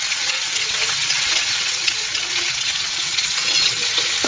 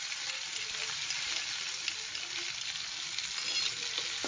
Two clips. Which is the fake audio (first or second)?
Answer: first